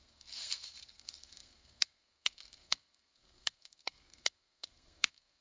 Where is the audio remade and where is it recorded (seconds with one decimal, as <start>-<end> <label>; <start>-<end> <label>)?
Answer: 0.0-5.4 remade